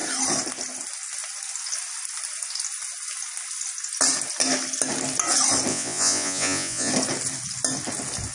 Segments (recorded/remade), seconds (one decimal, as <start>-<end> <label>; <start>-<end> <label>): 0.0-5.7 recorded; 5.7-6.9 remade; 6.9-8.3 recorded